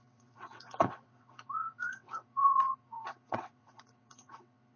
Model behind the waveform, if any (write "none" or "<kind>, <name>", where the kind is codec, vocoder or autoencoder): vocoder, WaveNeXt